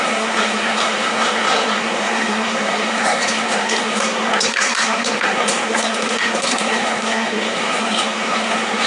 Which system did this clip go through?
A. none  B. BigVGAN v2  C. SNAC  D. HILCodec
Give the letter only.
C